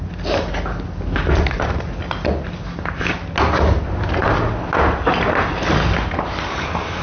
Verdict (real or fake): real